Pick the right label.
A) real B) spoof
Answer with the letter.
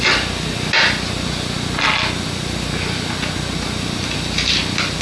A